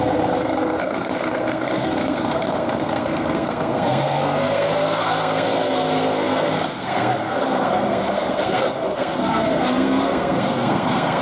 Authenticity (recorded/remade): remade